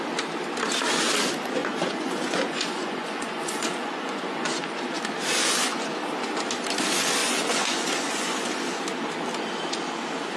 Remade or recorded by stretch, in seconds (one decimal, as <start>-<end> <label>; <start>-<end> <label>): 0.0-1.6 recorded; 1.6-5.0 remade; 5.0-5.4 recorded; 5.4-5.9 remade; 5.9-7.2 recorded; 7.2-8.8 remade; 8.8-10.4 recorded

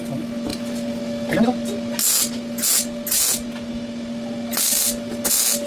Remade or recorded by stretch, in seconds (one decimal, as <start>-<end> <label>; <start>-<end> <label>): 0.0-5.7 recorded

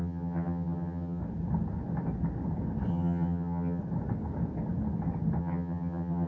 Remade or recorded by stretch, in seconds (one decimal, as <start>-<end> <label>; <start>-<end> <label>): 0.0-1.2 remade; 1.2-2.9 recorded; 2.9-3.8 remade; 3.8-5.4 recorded; 5.4-6.3 remade

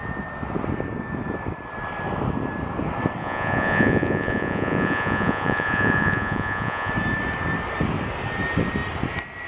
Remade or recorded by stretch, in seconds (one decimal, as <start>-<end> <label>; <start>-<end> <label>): 0.0-3.2 recorded; 3.2-6.9 remade; 6.9-9.5 recorded

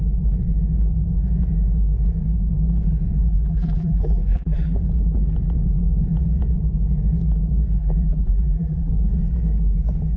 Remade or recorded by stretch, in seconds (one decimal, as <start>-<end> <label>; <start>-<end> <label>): 0.0-3.3 recorded; 3.3-4.8 remade; 4.8-7.8 recorded; 7.8-8.9 remade; 8.9-10.2 recorded

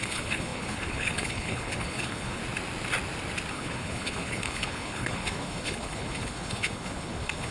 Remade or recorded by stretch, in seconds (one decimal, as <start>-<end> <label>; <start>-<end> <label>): 0.0-2.4 remade; 2.4-3.5 recorded; 3.5-7.5 remade